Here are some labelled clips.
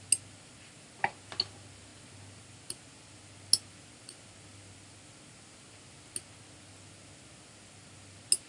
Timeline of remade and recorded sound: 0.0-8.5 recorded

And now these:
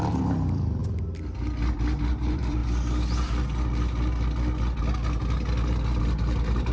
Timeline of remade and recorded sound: 0.0-0.8 remade; 0.8-2.1 recorded; 2.1-2.6 remade; 2.6-6.0 recorded; 6.0-6.7 remade

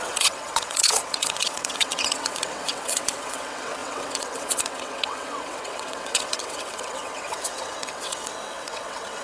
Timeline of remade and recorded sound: 0.0-9.2 remade